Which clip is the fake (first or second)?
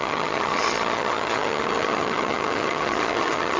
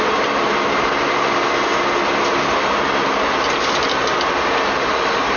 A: first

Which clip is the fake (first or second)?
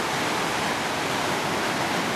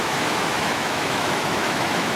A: second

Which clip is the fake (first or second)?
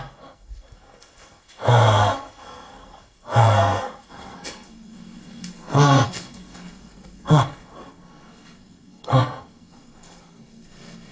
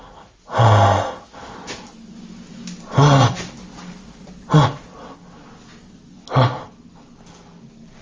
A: first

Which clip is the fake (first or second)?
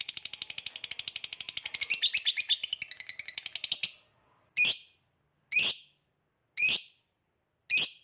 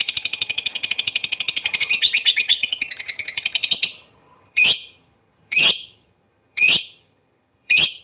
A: second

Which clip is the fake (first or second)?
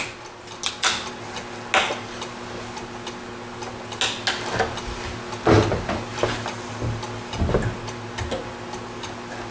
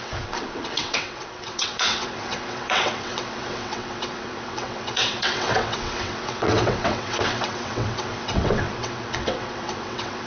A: second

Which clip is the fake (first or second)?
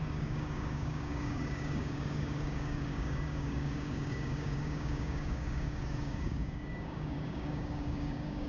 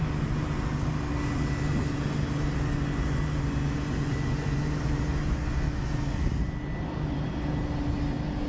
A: first